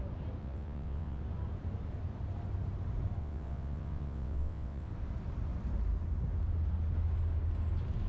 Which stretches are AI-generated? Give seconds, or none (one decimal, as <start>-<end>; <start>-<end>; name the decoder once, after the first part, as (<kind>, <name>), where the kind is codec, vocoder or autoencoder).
0.4-1.2 (vocoder, WaveNeXt); 3.2-4.9